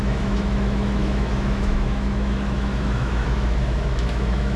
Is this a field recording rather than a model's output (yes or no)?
no